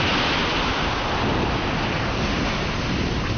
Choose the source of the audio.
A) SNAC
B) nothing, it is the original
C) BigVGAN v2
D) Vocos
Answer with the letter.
B